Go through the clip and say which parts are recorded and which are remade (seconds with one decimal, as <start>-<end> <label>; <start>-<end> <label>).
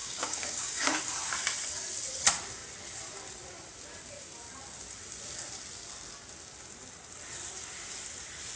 0.0-1.0 remade; 1.0-8.6 recorded